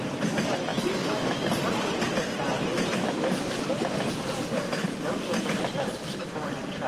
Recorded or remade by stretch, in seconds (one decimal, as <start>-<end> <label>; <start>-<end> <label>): 0.0-0.7 recorded; 0.7-1.5 remade; 1.5-6.9 recorded